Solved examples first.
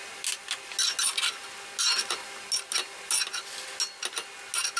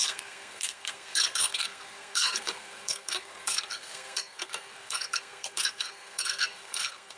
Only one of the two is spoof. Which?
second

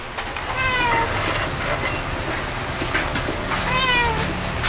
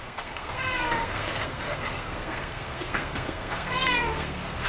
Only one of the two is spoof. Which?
second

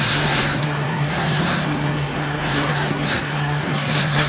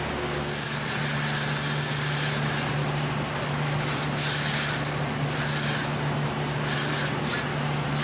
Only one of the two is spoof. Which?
first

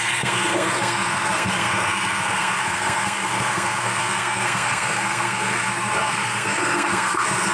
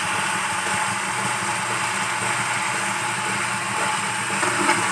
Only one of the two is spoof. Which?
first